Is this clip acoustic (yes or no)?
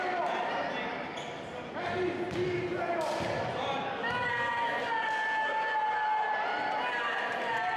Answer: yes